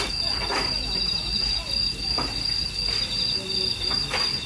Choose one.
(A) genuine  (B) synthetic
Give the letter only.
A